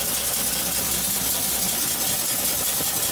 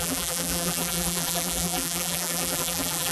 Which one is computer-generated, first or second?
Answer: second